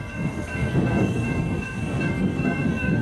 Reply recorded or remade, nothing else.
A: remade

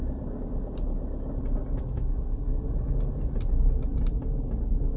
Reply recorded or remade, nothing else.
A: recorded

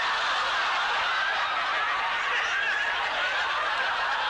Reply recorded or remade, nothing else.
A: recorded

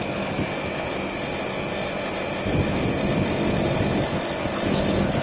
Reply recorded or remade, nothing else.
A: recorded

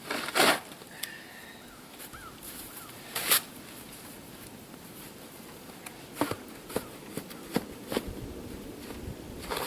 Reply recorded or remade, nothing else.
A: recorded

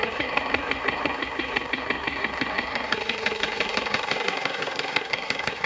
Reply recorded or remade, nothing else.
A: remade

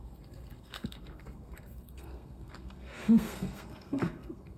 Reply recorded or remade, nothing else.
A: remade